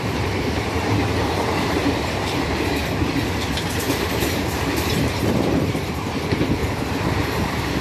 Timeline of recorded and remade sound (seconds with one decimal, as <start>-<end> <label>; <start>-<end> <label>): 0.0-2.8 remade; 2.8-4.1 recorded; 4.1-6.6 remade; 6.6-7.2 recorded; 7.2-7.8 remade